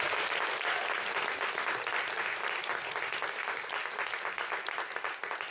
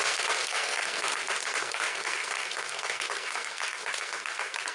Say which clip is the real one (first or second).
first